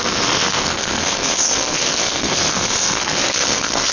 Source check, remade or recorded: remade